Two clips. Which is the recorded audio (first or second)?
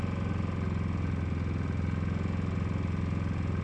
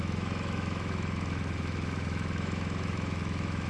first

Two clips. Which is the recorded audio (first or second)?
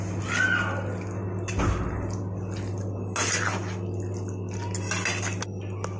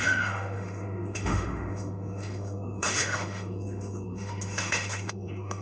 first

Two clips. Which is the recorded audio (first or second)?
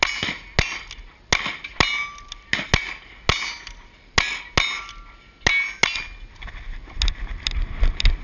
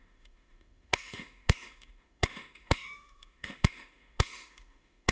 first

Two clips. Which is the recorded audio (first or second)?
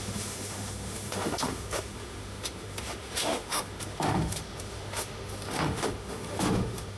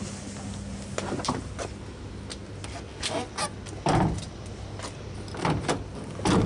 second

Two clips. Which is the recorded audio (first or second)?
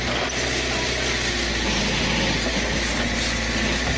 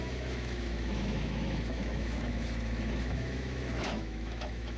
first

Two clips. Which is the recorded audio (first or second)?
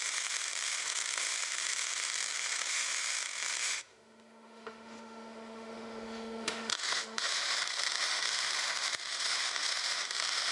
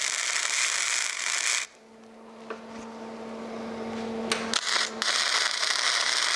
second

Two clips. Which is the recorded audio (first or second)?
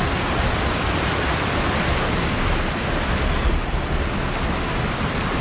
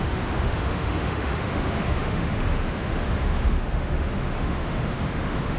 first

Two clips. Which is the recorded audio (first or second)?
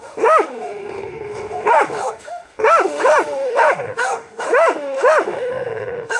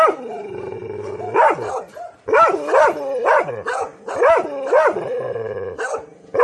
second